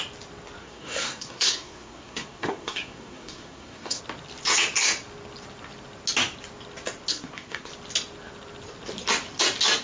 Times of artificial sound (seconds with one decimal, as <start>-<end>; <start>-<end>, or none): 0.6-4.0; 7.1-7.7